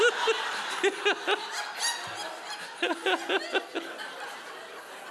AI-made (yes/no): no